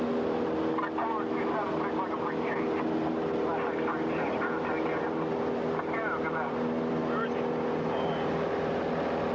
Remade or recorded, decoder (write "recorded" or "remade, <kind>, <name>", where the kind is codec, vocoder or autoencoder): recorded